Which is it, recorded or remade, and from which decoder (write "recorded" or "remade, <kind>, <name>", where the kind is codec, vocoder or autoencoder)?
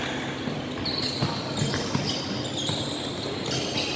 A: recorded